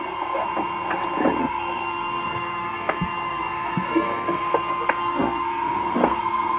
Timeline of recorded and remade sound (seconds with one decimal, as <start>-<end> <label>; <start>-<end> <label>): 0.0-0.4 remade; 0.4-1.4 recorded; 1.4-6.6 remade